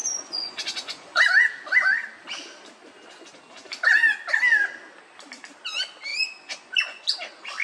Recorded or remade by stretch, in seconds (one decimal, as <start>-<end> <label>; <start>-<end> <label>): 0.0-1.2 remade; 1.2-6.1 recorded; 6.1-7.0 remade; 7.0-7.6 recorded